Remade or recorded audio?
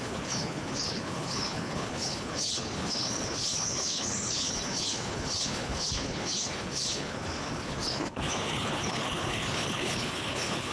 remade